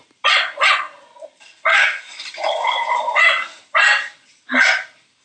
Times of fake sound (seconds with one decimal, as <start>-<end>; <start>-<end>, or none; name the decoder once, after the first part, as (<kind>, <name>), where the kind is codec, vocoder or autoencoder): 1.7-2.2 (codec, DAC)